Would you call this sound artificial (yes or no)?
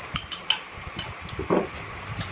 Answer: no